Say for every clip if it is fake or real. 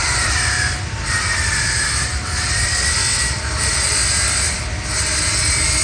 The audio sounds real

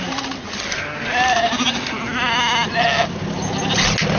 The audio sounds real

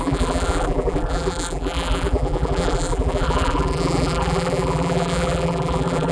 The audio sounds fake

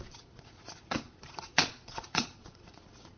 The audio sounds fake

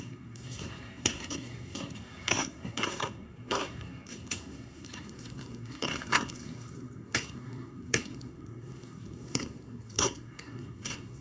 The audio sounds fake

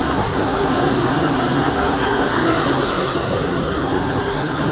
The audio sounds fake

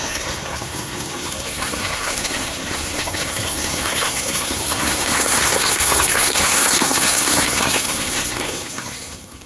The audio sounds fake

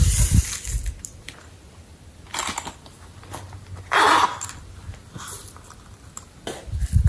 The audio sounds real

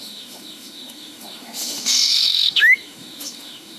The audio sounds fake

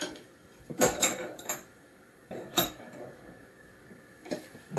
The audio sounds fake